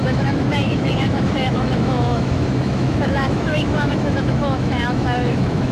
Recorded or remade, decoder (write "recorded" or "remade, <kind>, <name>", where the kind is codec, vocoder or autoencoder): remade, autoencoder, DAC-VAE